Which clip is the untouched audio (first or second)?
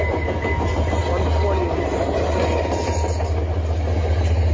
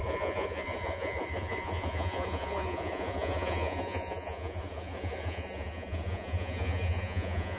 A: first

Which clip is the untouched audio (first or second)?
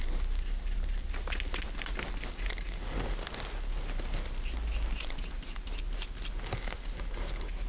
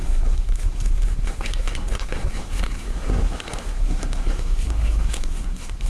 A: first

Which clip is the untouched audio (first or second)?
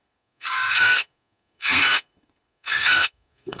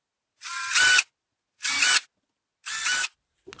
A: second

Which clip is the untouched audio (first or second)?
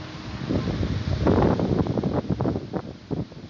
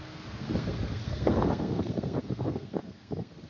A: first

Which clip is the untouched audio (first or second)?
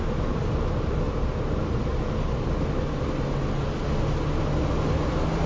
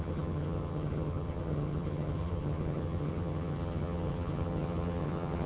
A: first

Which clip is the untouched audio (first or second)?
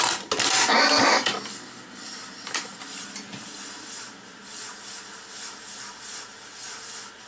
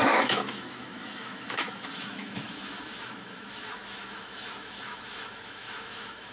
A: first